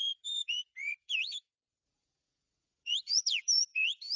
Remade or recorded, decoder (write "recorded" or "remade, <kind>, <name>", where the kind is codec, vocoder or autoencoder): remade, vocoder, Vocos